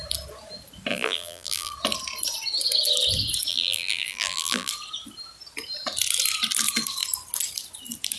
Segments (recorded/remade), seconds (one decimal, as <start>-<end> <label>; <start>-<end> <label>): 0.0-0.9 recorded; 0.9-1.7 remade; 1.7-3.5 recorded; 3.5-4.7 remade; 4.7-8.2 recorded